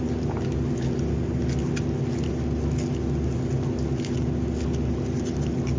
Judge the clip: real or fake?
real